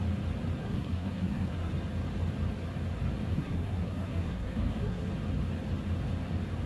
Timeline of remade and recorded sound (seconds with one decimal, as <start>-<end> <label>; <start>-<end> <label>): 0.0-0.6 recorded; 0.6-1.7 remade; 1.7-3.3 recorded; 3.3-5.1 remade; 5.1-6.7 recorded